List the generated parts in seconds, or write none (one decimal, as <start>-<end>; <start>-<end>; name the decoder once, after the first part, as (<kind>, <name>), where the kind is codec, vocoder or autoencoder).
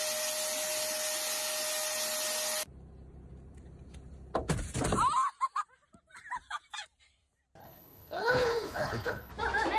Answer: 7.6-9.3 (codec, HILCodec)